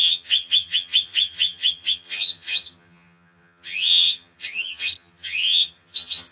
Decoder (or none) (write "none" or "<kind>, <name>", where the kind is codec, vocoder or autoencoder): vocoder, HiFi-GAN